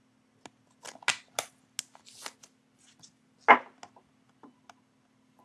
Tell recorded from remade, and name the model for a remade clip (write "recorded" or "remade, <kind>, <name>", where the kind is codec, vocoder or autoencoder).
recorded